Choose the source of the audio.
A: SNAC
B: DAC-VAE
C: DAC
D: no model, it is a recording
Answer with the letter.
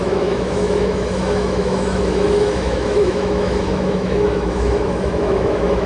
B